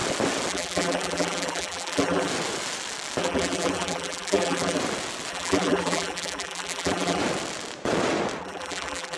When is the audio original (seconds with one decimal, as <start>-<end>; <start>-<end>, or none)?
0.0-0.5; 2.3-3.2; 4.8-5.3; 7.2-8.4